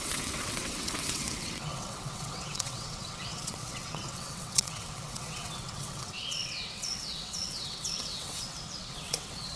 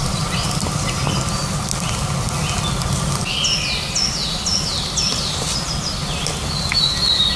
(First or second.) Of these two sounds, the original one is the second